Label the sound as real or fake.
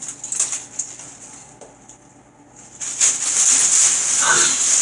real